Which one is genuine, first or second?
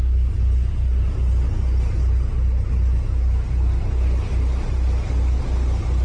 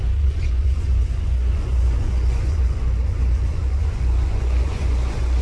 first